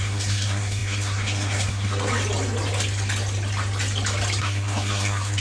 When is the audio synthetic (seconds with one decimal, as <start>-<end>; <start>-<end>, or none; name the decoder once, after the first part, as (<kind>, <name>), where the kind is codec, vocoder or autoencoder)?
0.0-2.1 (codec, SNAC); 4.4-5.4